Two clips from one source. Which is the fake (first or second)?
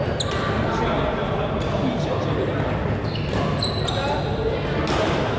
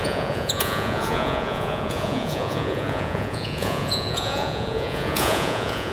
second